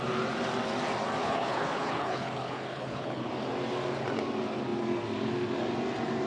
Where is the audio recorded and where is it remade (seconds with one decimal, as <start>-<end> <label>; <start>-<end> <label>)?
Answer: 0.0-1.2 recorded; 1.2-3.3 remade; 3.3-6.3 recorded